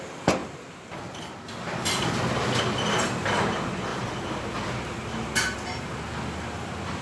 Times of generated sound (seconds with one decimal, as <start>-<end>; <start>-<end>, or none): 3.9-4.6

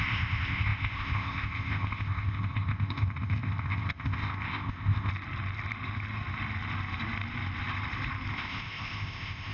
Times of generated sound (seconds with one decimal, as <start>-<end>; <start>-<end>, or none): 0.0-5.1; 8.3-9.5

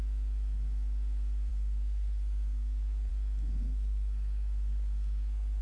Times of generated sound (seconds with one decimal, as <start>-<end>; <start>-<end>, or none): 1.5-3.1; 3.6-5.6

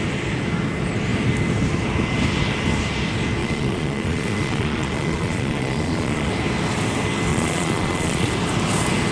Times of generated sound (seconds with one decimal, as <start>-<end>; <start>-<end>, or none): 3.4-6.3; 7.3-8.3